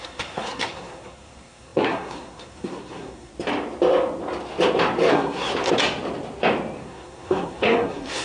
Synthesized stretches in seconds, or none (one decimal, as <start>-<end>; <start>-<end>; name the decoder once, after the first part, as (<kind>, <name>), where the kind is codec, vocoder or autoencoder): 0.0-3.3 (codec, SNAC); 5.1-5.5; 6.8-8.2